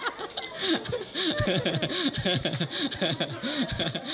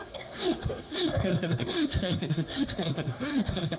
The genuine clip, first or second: first